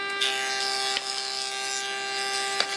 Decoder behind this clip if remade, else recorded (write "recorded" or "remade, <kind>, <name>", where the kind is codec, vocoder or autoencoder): recorded